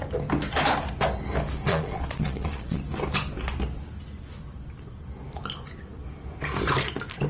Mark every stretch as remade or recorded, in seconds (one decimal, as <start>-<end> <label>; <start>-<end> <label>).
0.0-1.7 recorded; 1.7-2.8 remade; 2.8-7.3 recorded